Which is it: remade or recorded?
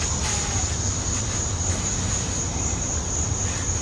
recorded